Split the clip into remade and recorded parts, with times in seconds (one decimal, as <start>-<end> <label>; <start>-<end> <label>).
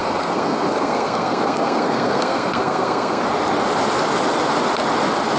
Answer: 0.0-3.2 remade; 3.2-5.4 recorded